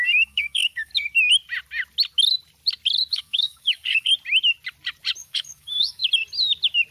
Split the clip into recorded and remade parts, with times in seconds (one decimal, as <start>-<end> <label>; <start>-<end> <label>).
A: 0.0-0.9 remade; 0.9-3.1 recorded; 3.1-4.1 remade; 4.1-5.2 recorded; 5.2-6.0 remade; 6.0-6.9 recorded